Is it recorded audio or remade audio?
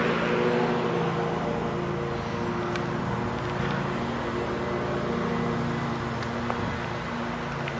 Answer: recorded